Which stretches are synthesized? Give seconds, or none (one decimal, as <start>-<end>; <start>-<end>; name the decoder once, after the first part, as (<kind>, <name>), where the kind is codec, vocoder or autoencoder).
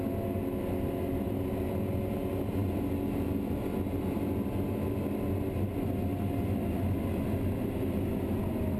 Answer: none